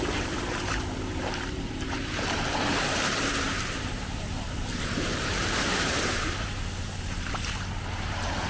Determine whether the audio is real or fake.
fake